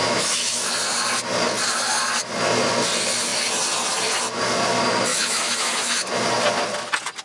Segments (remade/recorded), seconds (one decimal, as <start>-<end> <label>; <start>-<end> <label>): 0.0-0.7 remade; 0.7-5.1 recorded; 5.1-6.1 remade; 6.1-7.2 recorded